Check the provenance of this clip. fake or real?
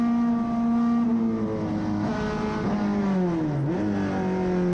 real